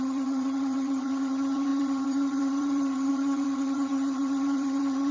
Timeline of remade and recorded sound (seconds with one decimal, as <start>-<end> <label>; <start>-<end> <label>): 0.0-5.1 remade